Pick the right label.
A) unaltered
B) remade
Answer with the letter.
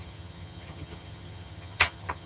B